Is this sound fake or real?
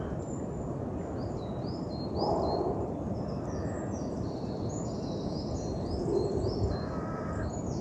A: real